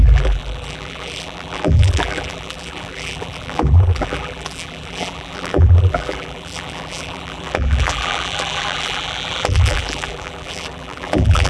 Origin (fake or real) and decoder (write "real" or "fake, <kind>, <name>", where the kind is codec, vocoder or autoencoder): fake, vocoder, BigVGAN v2